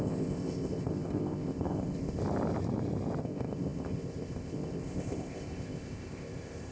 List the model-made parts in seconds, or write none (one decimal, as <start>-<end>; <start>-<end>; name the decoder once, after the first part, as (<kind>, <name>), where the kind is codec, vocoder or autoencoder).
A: 0.0-2.2 (codec, ZipCodec); 3.2-6.7